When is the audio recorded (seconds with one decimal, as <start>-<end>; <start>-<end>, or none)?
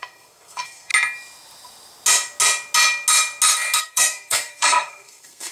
0.9-3.8